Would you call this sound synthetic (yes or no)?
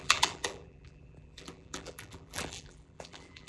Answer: yes